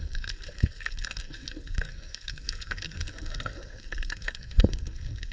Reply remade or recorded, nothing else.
remade